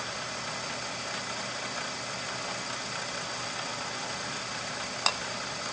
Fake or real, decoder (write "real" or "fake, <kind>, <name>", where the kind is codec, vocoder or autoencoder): real